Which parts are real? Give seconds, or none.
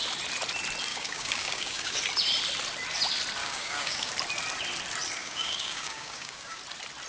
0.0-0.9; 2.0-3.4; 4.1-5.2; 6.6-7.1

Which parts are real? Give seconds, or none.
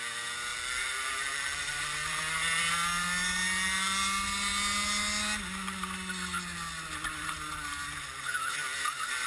0.0-0.5; 2.2-9.3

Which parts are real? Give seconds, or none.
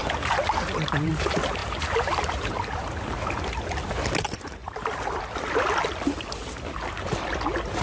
1.1-1.6; 2.5-7.8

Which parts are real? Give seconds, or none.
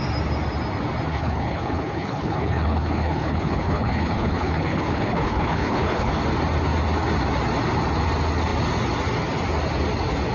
0.0-1.1; 6.1-10.3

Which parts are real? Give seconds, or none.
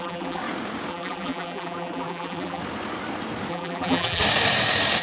0.4-0.9; 2.6-3.5; 4.2-5.0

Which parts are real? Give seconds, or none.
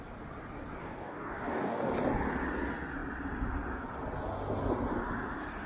0.0-0.8; 1.9-5.7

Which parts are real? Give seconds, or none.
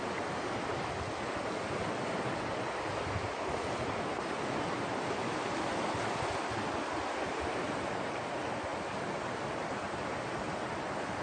0.0-8.7; 10.3-11.2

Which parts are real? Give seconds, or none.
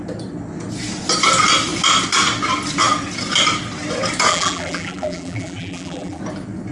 0.0-4.3; 6.2-6.7